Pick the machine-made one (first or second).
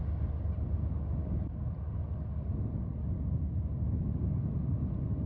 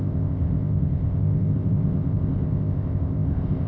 second